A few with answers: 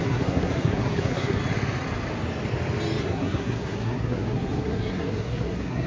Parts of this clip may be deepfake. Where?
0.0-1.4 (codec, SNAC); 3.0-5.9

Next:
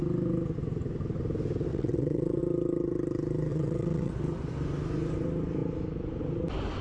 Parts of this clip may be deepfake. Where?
1.7-2.4 (vocoder, WaveNeXt); 3.5-4.1

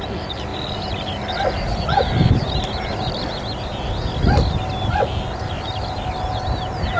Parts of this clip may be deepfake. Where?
1.6-2.1 (vocoder, Vocos)

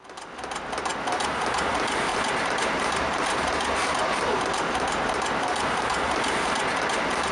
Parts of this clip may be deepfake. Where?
2.1-6.5 (vocoder, BigVGAN v2)

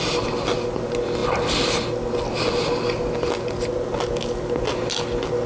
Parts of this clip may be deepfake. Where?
none

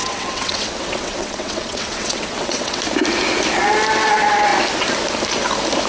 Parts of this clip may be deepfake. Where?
0.0-2.8 (vocoder, WaveNeXt)

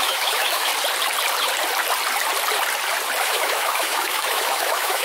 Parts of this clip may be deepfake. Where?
0.0-0.7 (autoencoder, DAC-VAE); 3.2-5.0